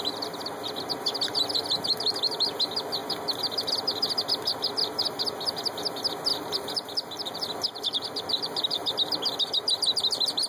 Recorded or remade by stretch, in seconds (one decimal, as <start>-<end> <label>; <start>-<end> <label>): 0.0-6.3 recorded; 6.3-8.9 remade; 8.9-10.5 recorded